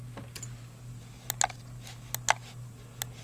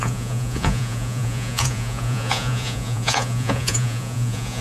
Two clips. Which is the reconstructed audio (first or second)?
second